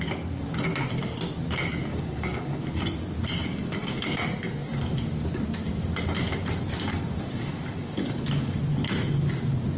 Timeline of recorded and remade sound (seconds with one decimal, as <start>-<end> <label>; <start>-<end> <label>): 0.0-1.9 recorded; 1.9-2.6 remade; 2.6-3.4 recorded; 3.4-4.0 remade; 4.0-6.9 recorded; 6.9-8.6 remade; 8.6-9.8 recorded